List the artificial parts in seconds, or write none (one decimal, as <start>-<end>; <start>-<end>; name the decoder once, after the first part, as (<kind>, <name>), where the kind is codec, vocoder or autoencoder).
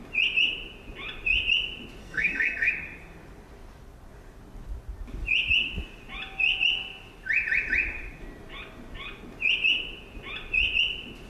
2.0-2.7 (codec, SNAC)